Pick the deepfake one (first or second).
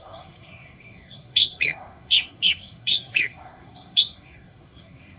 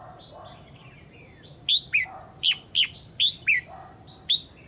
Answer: first